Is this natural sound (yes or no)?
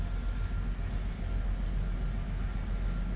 yes